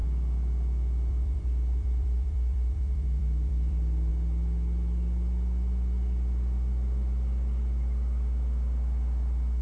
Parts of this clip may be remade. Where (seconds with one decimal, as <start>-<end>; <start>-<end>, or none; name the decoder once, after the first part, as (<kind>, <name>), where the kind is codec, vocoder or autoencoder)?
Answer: 1.1-4.1 (vocoder, BigVGAN v2)

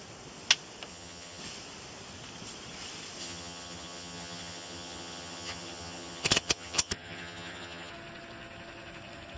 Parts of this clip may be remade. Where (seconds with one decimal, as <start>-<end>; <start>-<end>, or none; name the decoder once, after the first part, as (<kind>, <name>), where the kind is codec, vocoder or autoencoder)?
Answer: 0.9-1.4 (vocoder, HiFi-GAN); 3.2-7.9

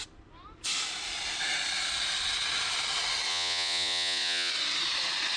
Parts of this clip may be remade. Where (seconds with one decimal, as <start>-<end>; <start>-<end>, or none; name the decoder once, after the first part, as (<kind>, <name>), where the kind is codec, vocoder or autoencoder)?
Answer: 3.3-4.5 (vocoder, Vocos)